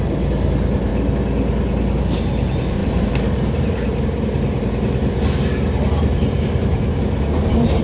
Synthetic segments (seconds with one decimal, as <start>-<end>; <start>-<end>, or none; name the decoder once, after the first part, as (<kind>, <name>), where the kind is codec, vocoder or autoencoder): 0.0-0.9 (vocoder, BigVGAN v2); 2.0-7.8